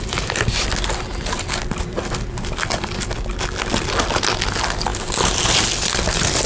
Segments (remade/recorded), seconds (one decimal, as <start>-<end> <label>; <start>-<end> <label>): 0.0-6.5 recorded